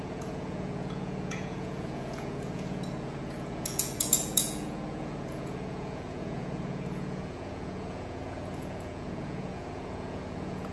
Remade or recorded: remade